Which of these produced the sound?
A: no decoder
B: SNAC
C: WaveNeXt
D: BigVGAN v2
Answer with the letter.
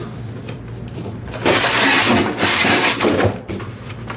D